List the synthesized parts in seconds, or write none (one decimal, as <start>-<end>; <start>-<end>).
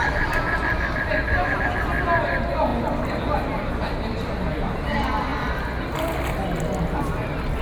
none